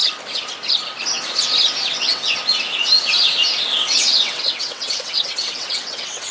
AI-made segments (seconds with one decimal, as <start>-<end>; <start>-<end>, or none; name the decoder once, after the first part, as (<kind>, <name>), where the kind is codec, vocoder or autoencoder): 1.9-2.4 (vocoder, WaveNeXt); 3.7-6.3